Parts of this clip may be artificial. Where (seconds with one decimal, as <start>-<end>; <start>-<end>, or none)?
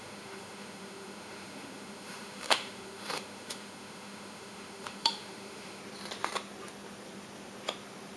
0.0-5.8